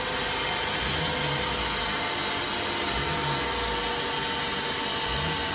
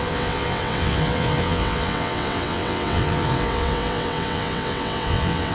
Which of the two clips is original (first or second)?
first